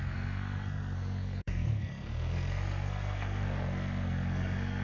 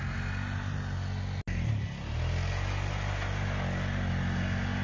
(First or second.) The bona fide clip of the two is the second